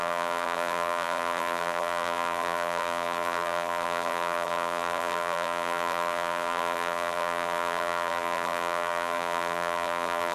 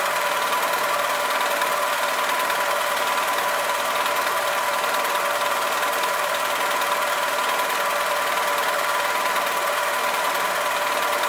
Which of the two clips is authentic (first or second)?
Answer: second